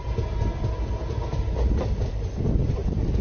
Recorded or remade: recorded